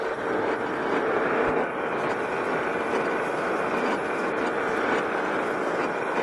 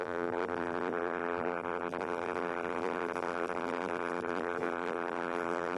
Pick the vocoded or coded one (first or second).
second